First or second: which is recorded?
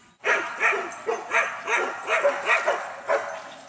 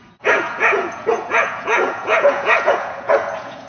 first